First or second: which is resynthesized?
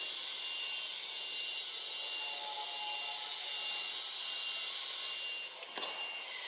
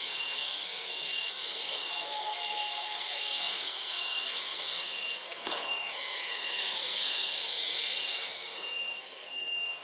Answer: second